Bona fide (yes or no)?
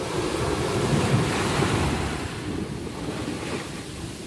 no